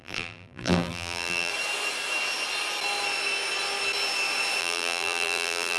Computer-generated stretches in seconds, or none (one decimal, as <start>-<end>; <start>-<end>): 0.0-1.5; 4.6-5.8